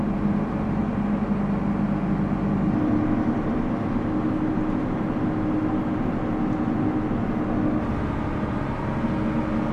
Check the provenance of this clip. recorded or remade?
recorded